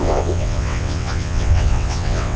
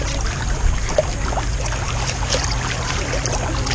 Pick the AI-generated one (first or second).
first